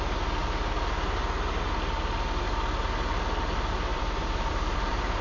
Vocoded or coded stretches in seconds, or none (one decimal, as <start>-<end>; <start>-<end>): 3.9-5.2